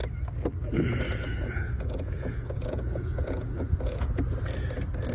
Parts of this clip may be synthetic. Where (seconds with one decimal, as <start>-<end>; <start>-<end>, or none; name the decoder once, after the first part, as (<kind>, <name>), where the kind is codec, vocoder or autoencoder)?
1.1-4.2 (vocoder, Vocos)